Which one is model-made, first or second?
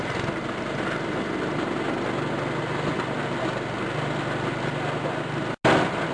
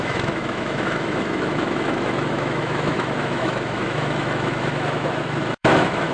second